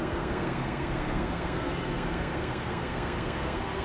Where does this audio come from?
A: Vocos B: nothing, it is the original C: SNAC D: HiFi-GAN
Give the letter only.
C